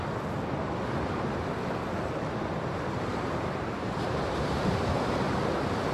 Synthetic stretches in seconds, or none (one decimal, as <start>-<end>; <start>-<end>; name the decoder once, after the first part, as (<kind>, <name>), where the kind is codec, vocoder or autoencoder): 3.1-5.0 (vocoder, BigVGAN v2)